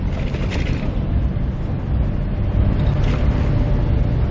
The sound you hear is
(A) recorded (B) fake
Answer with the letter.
A